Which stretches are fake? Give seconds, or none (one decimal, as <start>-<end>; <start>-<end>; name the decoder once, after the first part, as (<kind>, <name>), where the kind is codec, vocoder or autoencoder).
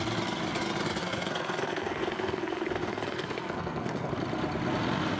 1.0-4.1 (codec, SNAC)